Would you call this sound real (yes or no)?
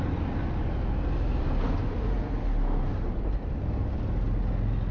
yes